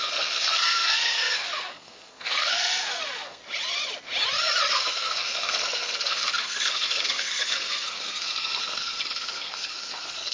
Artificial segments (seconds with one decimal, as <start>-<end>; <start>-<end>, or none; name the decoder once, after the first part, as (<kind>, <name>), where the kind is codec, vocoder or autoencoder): 0.0-3.4 (codec, SNAC); 4.7-10.3